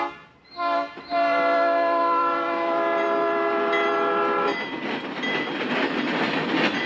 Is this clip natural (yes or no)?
yes